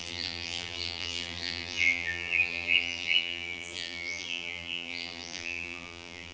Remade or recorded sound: remade